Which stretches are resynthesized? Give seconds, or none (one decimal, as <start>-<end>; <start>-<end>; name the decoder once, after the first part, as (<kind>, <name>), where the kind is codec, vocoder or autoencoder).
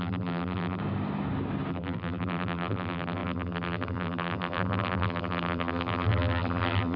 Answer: 0.0-0.8 (vocoder, BigVGAN v2); 1.7-7.0